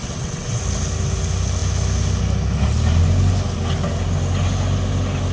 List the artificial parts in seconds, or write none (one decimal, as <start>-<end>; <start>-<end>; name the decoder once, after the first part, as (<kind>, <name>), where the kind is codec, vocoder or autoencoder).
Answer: 0.0-0.6 (vocoder, WaveNeXt)

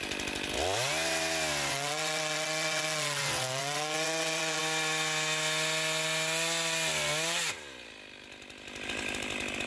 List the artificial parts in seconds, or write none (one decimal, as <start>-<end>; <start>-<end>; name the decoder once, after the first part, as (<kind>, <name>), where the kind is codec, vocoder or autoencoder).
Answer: 1.7-4.6 (vocoder, WaveNeXt)

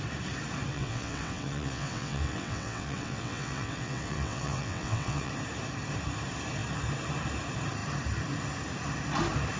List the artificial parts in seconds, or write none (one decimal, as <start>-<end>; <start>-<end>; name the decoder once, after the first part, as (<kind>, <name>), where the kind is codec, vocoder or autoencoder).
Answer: 0.7-5.3 (vocoder, WaveNeXt)

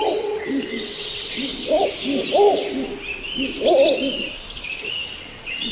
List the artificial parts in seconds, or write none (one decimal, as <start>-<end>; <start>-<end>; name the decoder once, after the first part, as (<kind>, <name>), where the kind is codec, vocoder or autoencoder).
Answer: 0.0-1.5 (vocoder, WaveNeXt); 4.9-5.7